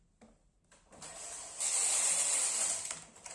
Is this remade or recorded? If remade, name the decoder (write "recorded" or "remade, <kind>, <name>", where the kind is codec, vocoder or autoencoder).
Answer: recorded